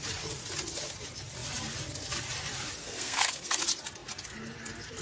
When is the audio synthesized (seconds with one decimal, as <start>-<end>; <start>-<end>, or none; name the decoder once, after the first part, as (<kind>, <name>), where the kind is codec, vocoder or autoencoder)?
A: 2.8-3.6 (codec, SNAC)